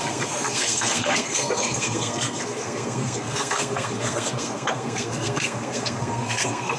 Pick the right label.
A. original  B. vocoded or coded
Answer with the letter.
B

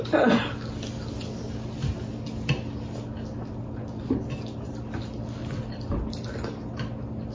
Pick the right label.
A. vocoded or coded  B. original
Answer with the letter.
B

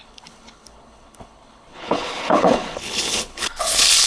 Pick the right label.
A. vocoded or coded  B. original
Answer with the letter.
A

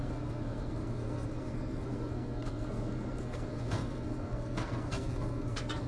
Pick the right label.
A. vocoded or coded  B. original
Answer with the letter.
A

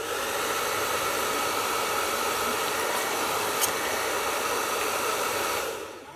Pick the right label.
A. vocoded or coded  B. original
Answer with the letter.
B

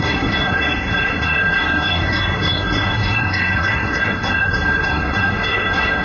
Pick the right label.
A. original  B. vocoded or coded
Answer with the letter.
B